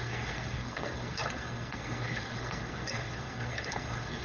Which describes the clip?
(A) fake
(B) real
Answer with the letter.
A